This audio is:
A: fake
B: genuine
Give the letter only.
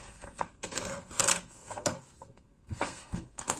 A